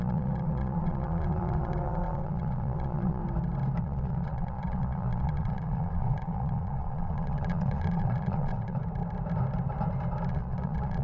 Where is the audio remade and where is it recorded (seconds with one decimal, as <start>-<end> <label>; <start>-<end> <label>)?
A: 0.0-3.2 remade; 3.2-3.8 recorded; 3.8-8.8 remade; 8.8-10.3 recorded; 10.3-11.0 remade